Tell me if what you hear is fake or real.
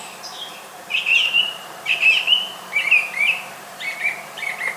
fake